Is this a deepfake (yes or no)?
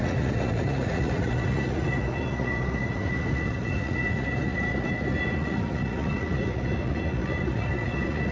yes